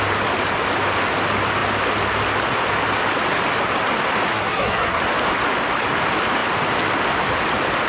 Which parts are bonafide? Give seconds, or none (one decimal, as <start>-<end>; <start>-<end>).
0.0-4.3; 5.0-7.9